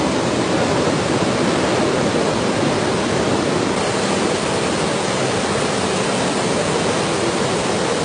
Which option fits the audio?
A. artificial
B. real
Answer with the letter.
B